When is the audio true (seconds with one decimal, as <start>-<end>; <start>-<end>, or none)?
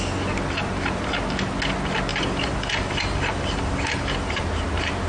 0.0-2.1; 4.4-5.1